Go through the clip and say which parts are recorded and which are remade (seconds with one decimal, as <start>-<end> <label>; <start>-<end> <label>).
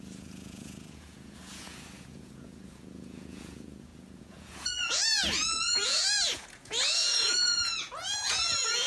0.0-8.9 remade